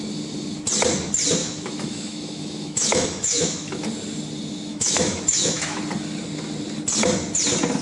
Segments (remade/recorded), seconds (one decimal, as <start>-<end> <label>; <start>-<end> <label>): 0.0-1.4 recorded; 1.4-3.8 remade; 3.8-4.7 recorded; 4.7-5.8 remade; 5.8-7.8 recorded